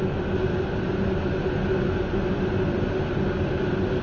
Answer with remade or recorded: recorded